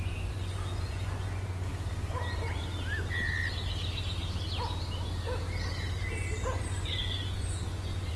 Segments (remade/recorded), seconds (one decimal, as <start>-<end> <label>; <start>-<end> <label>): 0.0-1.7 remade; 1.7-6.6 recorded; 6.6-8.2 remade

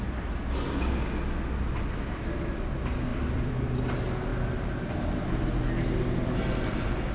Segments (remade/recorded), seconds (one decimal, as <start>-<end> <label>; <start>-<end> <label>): 0.0-3.1 recorded; 3.1-3.8 remade; 3.8-7.1 recorded

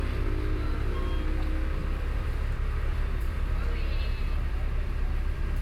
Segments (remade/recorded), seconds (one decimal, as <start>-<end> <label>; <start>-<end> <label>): 0.0-1.8 recorded; 1.8-5.6 remade

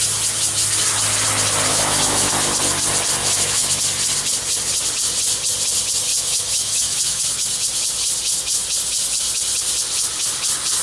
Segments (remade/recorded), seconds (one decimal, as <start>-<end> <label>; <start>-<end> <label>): 0.0-1.7 recorded; 1.7-2.3 remade; 2.3-3.2 recorded; 3.2-3.8 remade; 3.8-6.1 recorded; 6.1-7.2 remade; 7.2-10.8 recorded

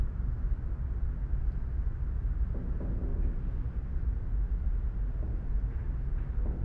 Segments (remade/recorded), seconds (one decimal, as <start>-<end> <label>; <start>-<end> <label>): 0.0-6.6 recorded

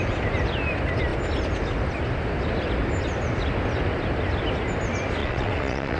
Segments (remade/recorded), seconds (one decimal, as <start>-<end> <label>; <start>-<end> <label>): 0.0-5.2 recorded; 5.2-6.0 remade

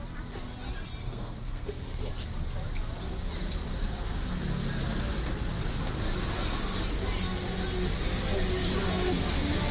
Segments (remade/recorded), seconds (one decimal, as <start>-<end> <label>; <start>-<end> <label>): 0.0-1.0 recorded; 1.0-2.1 remade; 2.1-9.7 recorded

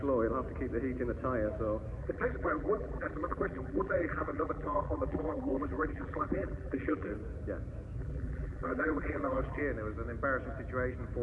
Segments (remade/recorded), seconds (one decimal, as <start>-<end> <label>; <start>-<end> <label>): 0.0-2.0 recorded; 2.0-7.1 remade; 7.1-8.0 recorded; 8.0-9.6 remade; 9.6-11.2 recorded